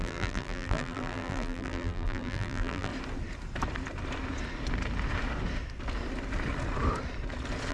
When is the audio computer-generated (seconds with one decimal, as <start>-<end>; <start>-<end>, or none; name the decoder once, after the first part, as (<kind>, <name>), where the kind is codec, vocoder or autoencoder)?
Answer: 0.0-2.9 (vocoder, BigVGAN v2)